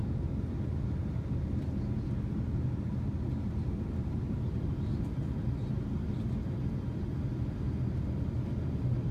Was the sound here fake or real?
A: real